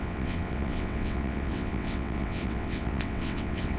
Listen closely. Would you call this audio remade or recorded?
remade